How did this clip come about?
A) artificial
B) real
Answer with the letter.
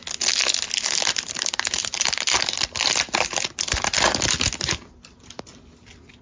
B